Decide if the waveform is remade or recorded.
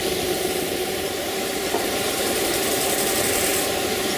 remade